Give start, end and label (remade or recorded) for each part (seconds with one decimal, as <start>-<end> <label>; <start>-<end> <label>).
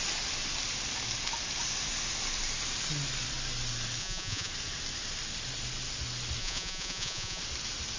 0.0-4.0 recorded; 4.0-4.5 remade; 4.5-6.4 recorded; 6.4-7.4 remade; 7.4-8.0 recorded